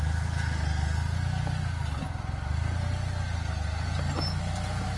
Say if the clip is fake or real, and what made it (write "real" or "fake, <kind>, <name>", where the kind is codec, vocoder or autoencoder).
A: real